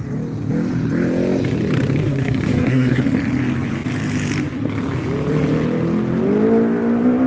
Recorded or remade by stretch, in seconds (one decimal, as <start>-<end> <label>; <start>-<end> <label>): 0.0-2.0 recorded; 2.0-3.0 remade; 3.0-7.3 recorded